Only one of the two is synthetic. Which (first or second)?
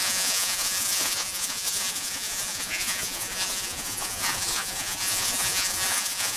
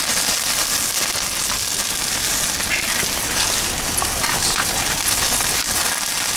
first